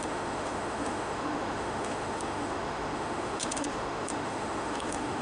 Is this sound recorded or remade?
remade